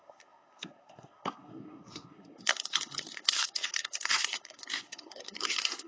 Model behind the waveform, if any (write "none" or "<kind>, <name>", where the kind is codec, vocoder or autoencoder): codec, SNAC